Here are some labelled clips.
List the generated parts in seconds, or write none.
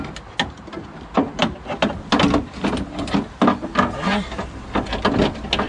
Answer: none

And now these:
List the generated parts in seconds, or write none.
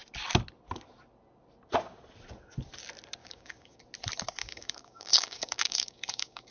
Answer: 3.2-3.8 (codec, DAC); 4.4-6.5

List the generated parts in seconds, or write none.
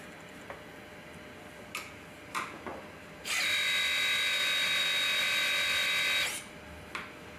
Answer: none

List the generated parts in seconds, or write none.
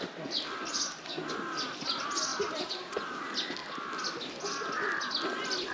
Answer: 2.3-3.2 (vocoder, BigVGAN v2)